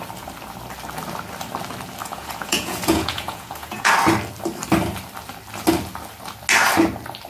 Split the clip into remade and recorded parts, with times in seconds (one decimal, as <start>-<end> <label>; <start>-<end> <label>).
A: 0.0-2.0 recorded; 2.0-3.9 remade; 3.9-7.3 recorded